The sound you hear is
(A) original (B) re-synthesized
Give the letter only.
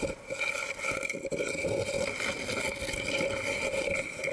A